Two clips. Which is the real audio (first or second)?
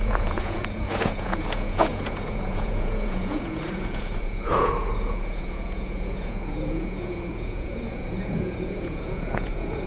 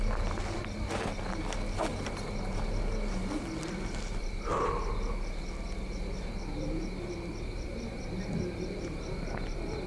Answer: second